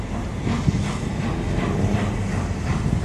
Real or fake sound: real